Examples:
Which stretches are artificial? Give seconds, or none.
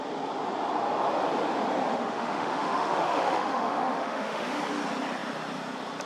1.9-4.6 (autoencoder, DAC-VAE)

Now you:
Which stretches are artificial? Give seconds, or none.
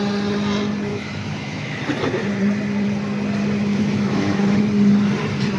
0.9-1.8 (autoencoder, DAC-VAE); 3.7-4.4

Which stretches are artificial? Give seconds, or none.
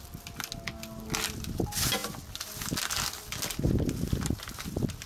none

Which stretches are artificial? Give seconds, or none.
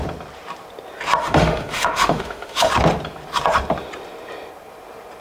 1.2-2.7 (autoencoder, DAC-VAE)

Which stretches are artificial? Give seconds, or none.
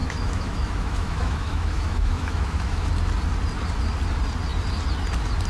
0.0-2.9 (autoencoder, DAC-VAE)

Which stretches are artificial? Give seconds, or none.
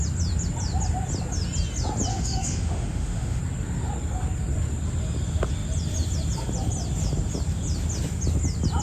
2.1-3.4 (autoencoder, DAC-VAE)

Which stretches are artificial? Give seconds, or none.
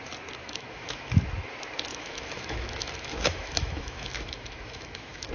0.4-1.1 (autoencoder, DAC-VAE); 1.9-5.3